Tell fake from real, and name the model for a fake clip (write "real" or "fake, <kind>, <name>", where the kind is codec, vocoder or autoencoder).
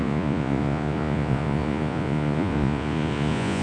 fake, vocoder, Vocos